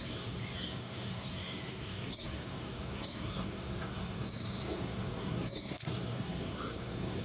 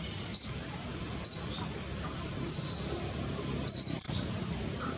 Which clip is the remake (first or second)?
first